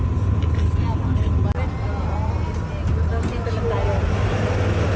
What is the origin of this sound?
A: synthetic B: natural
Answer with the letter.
B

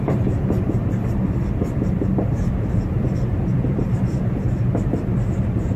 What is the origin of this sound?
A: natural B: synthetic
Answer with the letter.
B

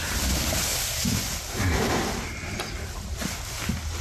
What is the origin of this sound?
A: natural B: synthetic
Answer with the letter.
A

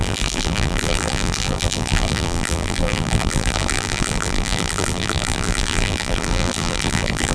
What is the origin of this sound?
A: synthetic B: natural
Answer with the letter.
A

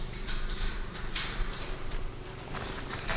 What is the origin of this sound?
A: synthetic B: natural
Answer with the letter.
A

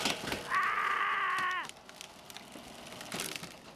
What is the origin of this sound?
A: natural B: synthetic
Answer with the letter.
A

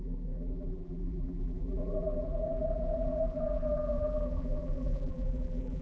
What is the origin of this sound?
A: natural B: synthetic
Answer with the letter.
B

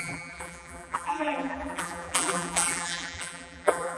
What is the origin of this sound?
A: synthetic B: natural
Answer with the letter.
A